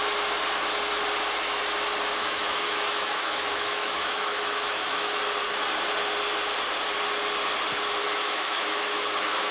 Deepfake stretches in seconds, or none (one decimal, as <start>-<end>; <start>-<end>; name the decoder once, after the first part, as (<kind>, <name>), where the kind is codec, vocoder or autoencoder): 2.2-5.2 (autoencoder, DAC-VAE); 8.0-9.5